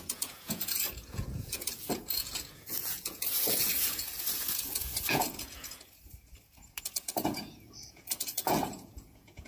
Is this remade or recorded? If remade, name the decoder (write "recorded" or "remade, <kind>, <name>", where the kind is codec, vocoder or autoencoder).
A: remade, vocoder, Vocos